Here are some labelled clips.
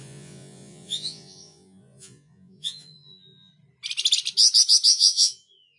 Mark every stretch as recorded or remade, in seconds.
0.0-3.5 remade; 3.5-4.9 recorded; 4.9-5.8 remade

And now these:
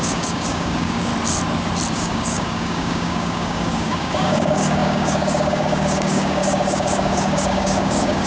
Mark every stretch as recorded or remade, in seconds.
0.0-1.1 remade; 1.1-1.9 recorded; 1.9-8.3 remade

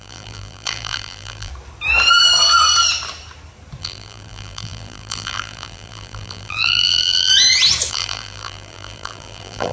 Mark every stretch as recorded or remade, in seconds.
0.0-1.5 remade; 1.5-3.8 recorded; 3.8-7.3 remade; 7.3-7.9 recorded; 7.9-9.7 remade

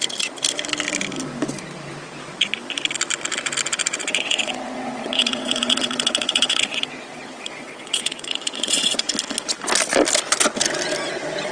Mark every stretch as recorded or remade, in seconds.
0.0-4.0 recorded; 4.0-9.1 remade; 9.1-11.5 recorded

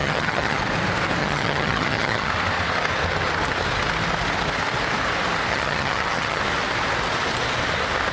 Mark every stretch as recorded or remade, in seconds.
0.0-0.6 remade; 0.6-1.2 recorded; 1.2-2.3 remade; 2.3-5.5 recorded; 5.5-6.4 remade; 6.4-8.1 recorded